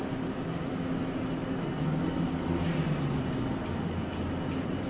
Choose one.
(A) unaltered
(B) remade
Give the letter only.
A